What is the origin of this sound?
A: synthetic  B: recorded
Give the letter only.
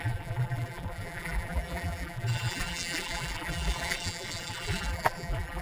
A